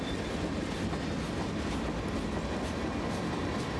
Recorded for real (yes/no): yes